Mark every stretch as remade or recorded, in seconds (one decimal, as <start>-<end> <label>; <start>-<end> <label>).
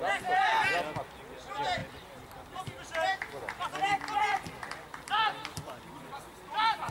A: 0.0-6.9 recorded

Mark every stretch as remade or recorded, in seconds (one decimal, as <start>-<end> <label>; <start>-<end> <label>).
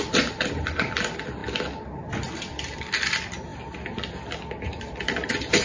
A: 0.0-5.6 recorded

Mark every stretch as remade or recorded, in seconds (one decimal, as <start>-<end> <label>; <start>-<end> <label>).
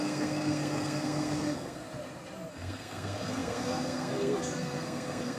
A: 0.0-1.8 remade; 1.8-2.5 recorded; 2.5-5.4 remade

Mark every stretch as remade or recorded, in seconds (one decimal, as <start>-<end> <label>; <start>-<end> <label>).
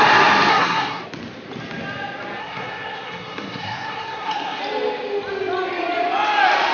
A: 0.0-0.5 recorded; 0.5-1.0 remade; 1.0-2.4 recorded; 2.4-4.6 remade; 4.6-6.7 recorded